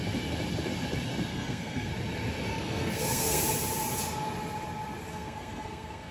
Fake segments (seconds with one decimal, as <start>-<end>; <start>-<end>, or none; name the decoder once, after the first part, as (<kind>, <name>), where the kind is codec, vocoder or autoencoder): 1.3-1.9 (codec, SNAC); 2.5-3.4; 5.1-6.1